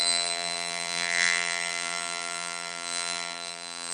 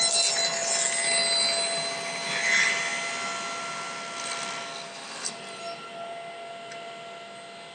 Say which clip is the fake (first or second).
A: first